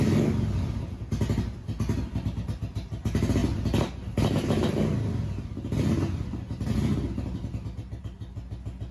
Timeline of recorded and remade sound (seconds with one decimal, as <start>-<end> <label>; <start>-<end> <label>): 0.0-8.9 recorded